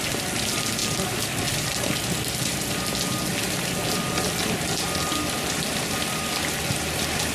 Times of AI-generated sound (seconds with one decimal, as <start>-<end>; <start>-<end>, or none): none